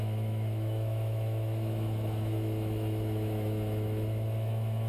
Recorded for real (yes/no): no